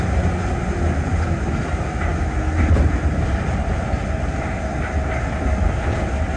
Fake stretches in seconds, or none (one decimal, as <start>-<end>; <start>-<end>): none